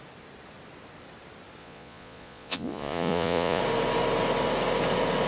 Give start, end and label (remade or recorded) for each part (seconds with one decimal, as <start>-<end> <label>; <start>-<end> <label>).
0.0-1.6 recorded; 1.6-3.6 remade; 3.6-5.3 recorded